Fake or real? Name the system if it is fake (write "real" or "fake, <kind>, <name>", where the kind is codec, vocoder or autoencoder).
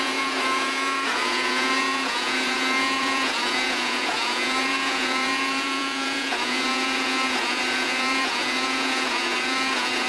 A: fake, vocoder, Vocos